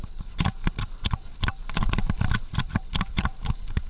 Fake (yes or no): no